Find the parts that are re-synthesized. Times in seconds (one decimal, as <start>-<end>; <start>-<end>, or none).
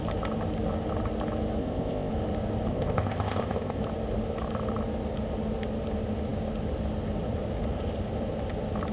1.6-2.1; 2.7-3.8